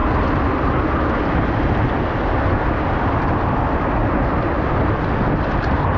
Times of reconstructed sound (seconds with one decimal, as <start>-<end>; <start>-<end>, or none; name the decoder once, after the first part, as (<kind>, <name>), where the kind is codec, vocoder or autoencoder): 1.2-4.0 (vocoder, BigVGAN v2); 4.6-6.0